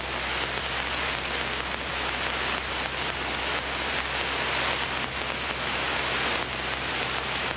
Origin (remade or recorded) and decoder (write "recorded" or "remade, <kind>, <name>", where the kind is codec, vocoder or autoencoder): recorded